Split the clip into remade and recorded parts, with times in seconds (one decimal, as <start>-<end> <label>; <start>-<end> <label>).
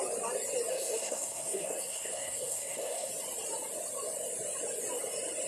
0.0-0.7 recorded; 0.7-3.1 remade; 3.1-5.5 recorded